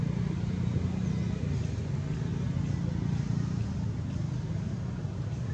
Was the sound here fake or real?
real